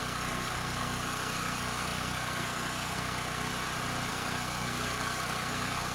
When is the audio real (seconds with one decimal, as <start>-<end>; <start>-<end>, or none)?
3.5-4.1